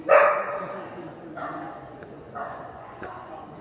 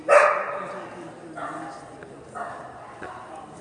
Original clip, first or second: second